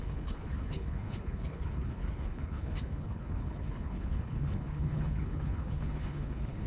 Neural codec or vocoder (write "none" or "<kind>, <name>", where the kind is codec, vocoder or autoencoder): codec, HILCodec